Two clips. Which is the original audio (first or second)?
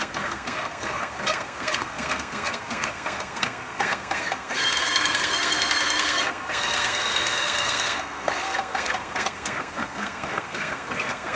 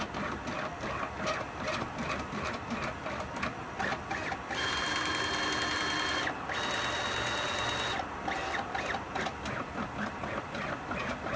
second